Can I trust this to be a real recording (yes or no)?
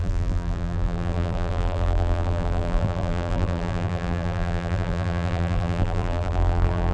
no